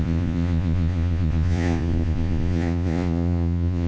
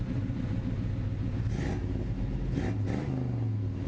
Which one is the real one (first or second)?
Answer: second